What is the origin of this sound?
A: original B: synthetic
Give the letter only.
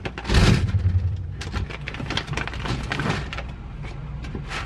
A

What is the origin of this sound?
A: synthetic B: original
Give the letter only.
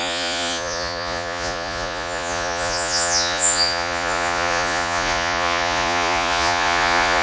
A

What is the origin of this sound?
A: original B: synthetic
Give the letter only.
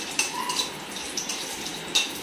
B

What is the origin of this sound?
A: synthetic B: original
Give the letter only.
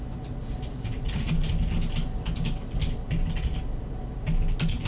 B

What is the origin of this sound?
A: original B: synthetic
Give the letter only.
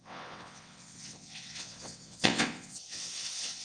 B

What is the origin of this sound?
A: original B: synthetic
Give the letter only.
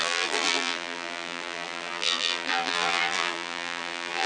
B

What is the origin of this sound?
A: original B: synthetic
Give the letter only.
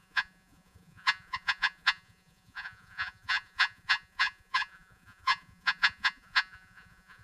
B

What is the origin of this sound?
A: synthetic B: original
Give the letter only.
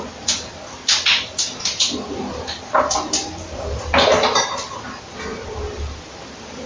B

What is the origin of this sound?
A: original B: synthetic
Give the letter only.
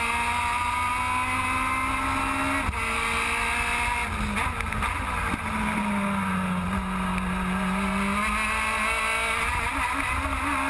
A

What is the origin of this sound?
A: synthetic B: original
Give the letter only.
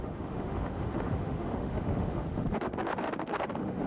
A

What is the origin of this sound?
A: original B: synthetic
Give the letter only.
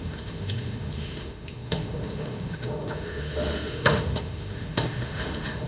B